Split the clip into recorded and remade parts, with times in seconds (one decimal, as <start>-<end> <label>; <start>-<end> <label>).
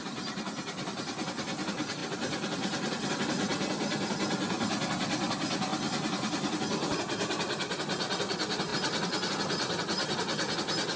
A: 0.0-2.0 recorded; 2.0-3.1 remade; 3.1-5.7 recorded; 5.7-6.6 remade; 6.6-11.0 recorded